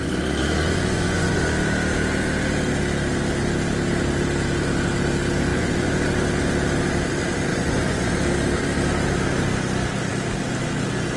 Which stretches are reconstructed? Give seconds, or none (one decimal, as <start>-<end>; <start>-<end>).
0.0-1.4; 5.5-6.0; 7.5-8.1